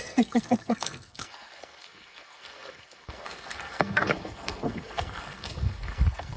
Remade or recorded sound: remade